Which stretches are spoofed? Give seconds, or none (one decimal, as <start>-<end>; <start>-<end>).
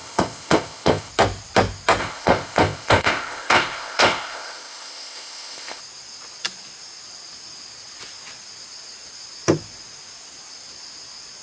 0.0-1.1; 2.0-5.8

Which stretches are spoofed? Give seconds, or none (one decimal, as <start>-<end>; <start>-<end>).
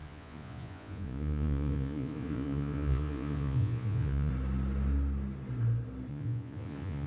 0.0-4.3; 6.1-7.1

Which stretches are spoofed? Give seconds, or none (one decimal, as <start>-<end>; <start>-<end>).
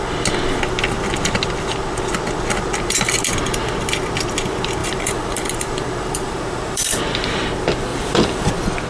4.8-7.0; 7.9-8.5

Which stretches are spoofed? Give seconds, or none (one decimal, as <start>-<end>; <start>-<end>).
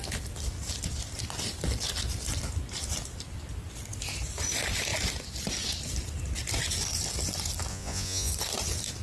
7.7-8.3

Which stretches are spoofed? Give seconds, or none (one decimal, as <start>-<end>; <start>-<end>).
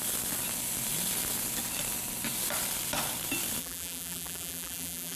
3.6-5.2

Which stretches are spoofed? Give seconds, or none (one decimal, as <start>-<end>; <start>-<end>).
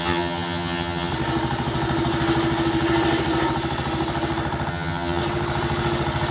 0.0-1.1; 4.7-5.2